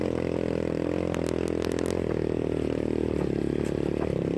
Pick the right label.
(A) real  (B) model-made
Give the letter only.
A